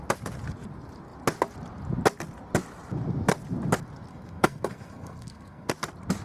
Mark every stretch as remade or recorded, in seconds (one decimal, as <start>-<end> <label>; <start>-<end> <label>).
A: 0.0-4.1 recorded; 4.1-5.7 remade; 5.7-6.2 recorded